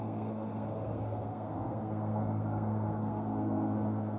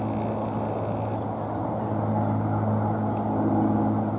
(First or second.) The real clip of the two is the second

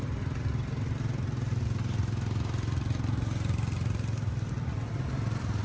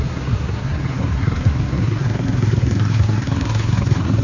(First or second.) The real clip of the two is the first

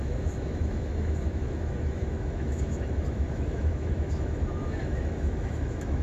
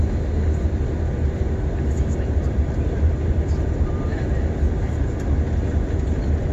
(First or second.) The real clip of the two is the second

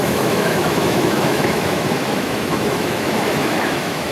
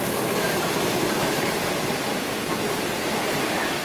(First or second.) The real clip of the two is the second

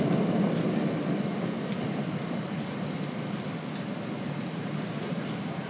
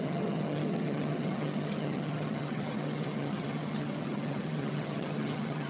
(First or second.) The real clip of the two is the first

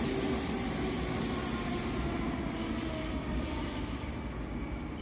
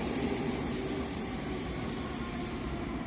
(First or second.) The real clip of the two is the first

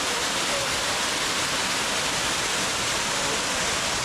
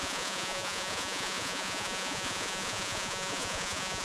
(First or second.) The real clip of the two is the first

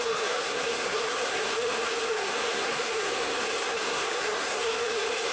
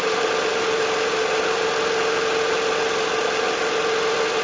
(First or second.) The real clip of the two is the second